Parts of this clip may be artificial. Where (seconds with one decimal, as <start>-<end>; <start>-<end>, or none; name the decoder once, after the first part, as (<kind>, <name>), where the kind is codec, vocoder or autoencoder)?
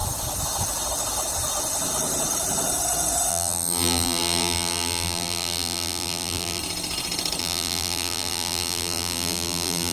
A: 3.3-6.6 (vocoder, BigVGAN v2); 7.4-9.9